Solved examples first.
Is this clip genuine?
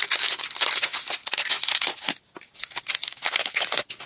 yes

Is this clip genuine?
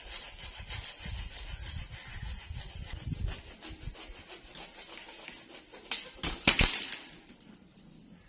yes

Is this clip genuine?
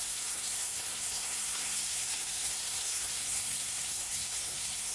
no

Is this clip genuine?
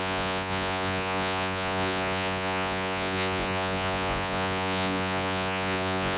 no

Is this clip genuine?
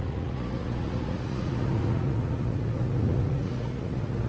no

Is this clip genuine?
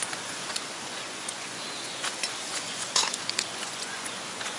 no